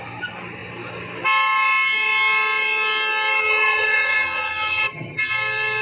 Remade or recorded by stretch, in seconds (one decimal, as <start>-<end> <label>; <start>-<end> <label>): 0.0-3.4 recorded; 3.4-5.3 remade; 5.3-5.8 recorded